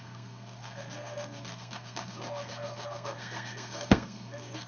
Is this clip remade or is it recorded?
remade